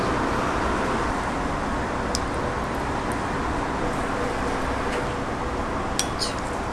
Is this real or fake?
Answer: real